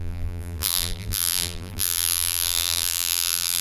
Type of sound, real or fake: fake